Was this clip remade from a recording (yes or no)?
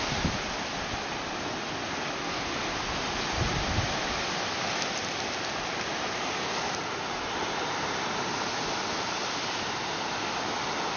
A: no